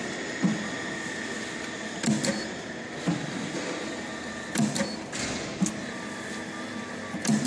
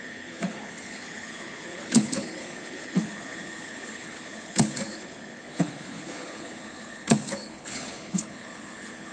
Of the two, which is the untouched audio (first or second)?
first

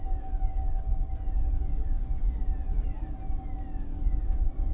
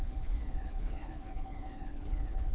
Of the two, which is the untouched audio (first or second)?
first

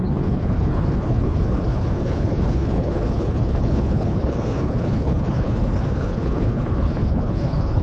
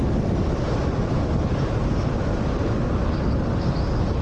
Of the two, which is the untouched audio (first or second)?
second